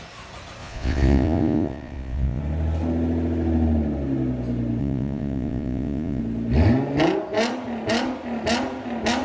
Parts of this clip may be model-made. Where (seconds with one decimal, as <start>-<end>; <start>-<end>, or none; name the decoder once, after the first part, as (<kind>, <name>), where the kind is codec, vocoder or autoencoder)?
0.6-2.4 (vocoder, Vocos); 4.8-6.2